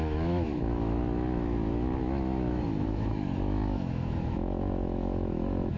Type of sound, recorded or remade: remade